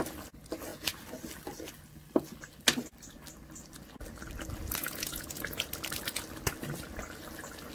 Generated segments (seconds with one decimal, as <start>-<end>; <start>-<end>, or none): 4.8-5.7